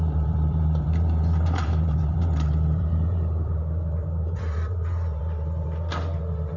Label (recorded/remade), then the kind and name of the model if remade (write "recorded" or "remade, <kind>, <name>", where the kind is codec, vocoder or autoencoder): remade, vocoder, BigVGAN v2